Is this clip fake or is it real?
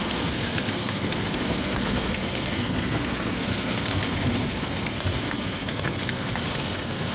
fake